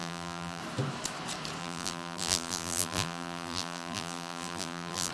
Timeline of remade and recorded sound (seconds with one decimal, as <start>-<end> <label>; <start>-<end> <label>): 0.0-0.6 remade; 0.6-1.6 recorded; 1.6-5.1 remade